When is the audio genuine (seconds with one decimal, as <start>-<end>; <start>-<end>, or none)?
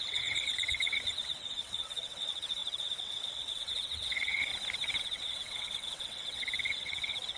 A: 4.5-5.0